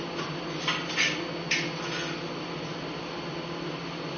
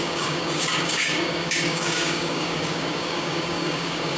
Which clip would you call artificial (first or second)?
second